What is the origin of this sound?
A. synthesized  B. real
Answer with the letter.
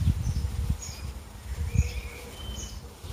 B